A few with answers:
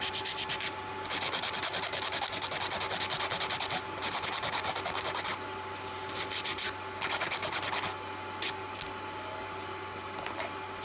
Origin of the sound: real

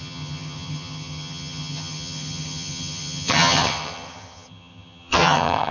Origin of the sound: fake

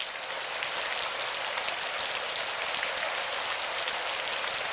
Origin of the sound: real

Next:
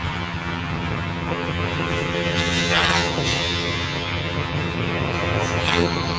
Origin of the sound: fake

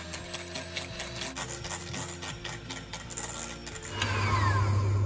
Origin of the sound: real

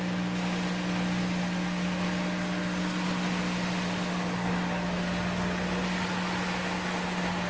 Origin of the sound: real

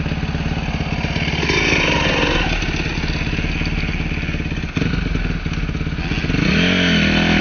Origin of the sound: real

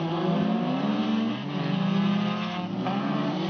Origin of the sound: real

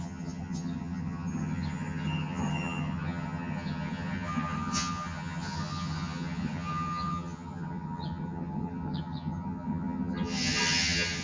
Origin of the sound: fake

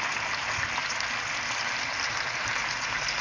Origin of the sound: real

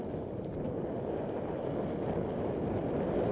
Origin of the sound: real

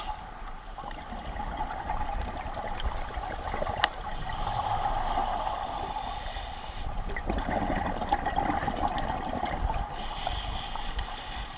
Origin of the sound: real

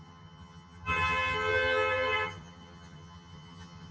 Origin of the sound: fake